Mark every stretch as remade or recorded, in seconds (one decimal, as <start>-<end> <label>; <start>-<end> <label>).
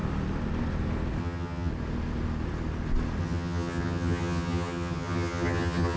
0.0-1.2 recorded; 1.2-1.7 remade; 1.7-3.2 recorded; 3.2-6.0 remade